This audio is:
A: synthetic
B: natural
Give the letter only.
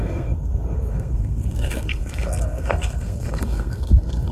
A